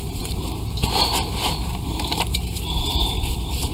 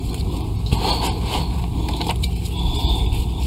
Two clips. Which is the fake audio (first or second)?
first